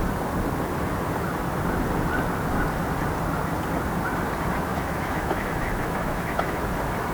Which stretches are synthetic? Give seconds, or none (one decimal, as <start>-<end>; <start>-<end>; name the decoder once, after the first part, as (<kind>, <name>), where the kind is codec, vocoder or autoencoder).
4.7-6.6 (autoencoder, DAC-VAE)